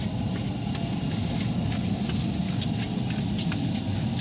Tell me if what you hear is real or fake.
real